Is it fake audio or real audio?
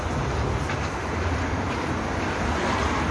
real